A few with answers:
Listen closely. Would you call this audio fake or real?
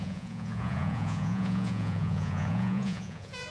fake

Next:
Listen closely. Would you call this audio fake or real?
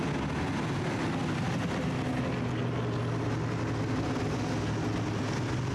real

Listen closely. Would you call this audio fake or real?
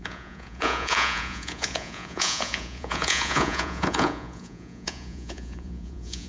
fake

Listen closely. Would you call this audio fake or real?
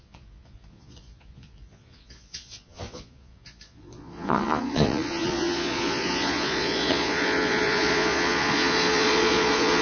fake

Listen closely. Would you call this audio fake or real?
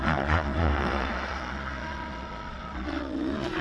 fake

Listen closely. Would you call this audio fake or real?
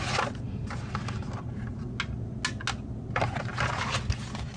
real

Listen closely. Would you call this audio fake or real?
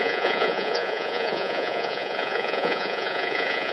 fake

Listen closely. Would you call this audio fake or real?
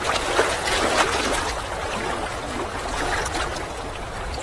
fake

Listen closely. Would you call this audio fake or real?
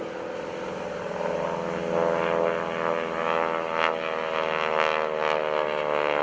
real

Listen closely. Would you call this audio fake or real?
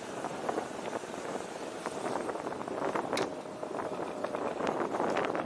real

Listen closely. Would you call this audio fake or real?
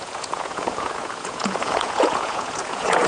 fake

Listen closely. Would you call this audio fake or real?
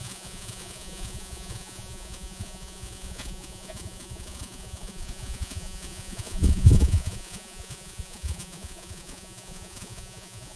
fake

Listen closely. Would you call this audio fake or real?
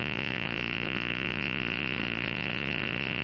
fake